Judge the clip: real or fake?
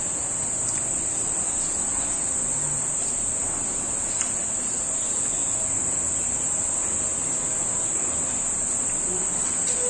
real